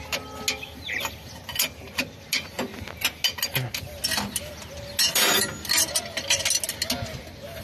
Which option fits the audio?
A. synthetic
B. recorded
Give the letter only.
B